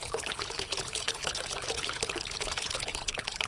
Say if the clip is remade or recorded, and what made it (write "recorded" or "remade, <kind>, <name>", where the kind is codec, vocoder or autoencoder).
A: remade, codec, HILCodec